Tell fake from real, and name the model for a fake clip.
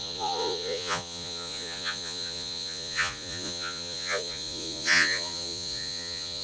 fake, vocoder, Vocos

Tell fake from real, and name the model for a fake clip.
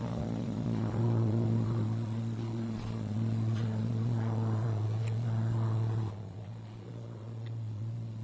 fake, vocoder, Vocos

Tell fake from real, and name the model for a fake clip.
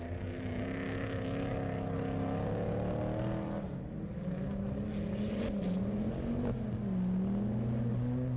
real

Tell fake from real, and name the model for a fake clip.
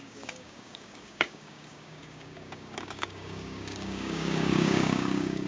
fake, codec, DAC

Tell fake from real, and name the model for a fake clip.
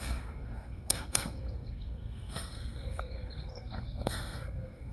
fake, codec, SNAC